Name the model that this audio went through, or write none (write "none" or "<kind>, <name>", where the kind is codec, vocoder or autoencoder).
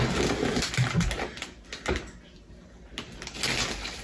none